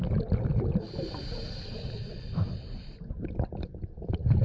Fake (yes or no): no